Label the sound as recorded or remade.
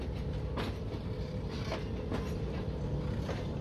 recorded